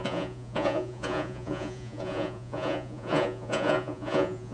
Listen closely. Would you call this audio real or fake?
fake